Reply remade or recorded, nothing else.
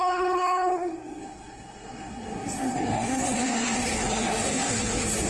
remade